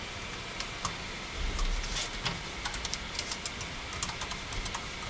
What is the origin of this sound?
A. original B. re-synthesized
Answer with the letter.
A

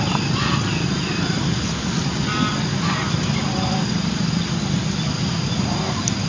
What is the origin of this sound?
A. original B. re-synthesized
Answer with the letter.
A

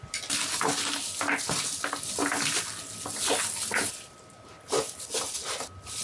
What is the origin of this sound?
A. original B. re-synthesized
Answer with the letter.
A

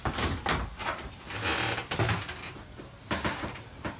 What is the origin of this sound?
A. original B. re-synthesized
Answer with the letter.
A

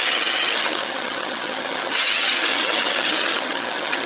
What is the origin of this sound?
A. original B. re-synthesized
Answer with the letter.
B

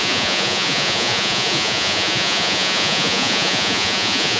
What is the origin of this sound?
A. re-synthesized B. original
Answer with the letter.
A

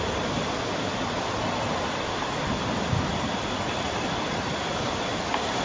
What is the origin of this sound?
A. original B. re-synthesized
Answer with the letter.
A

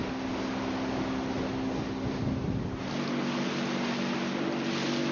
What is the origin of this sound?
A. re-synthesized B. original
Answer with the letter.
B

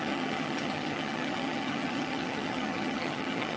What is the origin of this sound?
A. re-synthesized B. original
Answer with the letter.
A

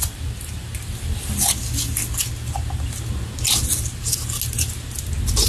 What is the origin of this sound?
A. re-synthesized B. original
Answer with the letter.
B